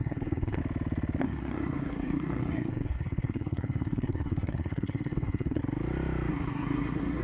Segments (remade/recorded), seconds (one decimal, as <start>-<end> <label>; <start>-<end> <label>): 0.0-0.6 remade; 0.6-1.2 recorded; 1.2-5.6 remade; 5.6-6.3 recorded; 6.3-7.2 remade